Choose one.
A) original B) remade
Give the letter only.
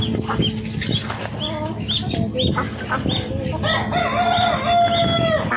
A